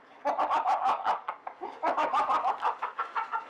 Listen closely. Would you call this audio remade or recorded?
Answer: remade